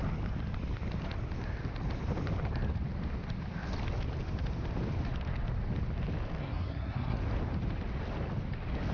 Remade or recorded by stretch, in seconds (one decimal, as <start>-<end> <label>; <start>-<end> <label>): 0.0-6.4 recorded; 6.4-7.2 remade; 7.2-8.9 recorded